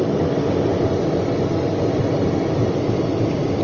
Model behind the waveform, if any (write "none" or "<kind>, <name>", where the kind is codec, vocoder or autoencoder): none